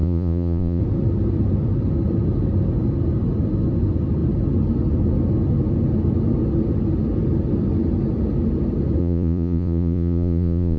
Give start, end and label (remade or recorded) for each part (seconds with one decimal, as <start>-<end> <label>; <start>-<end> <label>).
0.0-0.8 remade; 0.8-9.0 recorded; 9.0-10.8 remade